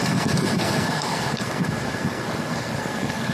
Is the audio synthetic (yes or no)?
yes